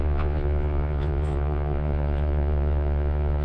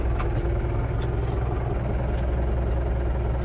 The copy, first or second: first